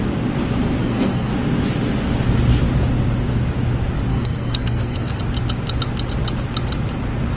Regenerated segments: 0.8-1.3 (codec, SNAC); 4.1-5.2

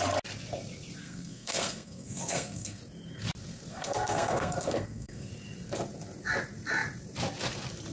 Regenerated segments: 1.0-2.8 (codec, SNAC); 3.7-5.3

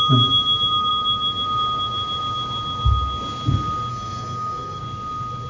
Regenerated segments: 3.9-4.8 (codec, SNAC)

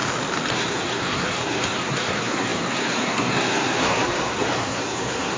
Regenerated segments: 0.5-5.4 (codec, SNAC)

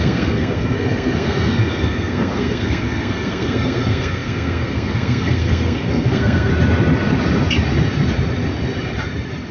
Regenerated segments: 0.0-6.5 (codec, SNAC)

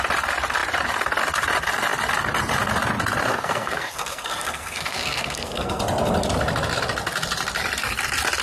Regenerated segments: 3.3-5.8 (codec, SNAC)